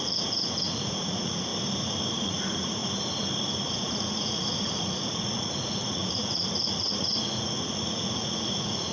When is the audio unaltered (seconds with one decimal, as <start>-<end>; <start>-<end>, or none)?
1.5-2.1; 2.8-3.7